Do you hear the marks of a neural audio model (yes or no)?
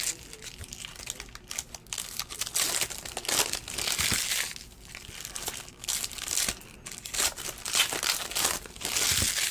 no